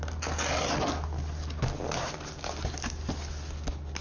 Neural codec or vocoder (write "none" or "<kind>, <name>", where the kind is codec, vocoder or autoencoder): none